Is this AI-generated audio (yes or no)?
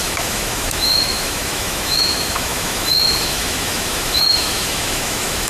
yes